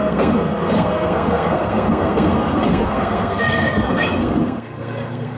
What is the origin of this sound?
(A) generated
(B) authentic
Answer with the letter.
A